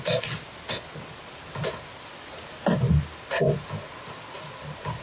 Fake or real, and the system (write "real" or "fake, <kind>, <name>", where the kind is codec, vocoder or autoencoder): real